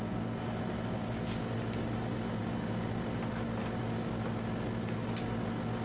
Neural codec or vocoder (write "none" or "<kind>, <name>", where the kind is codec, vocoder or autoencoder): none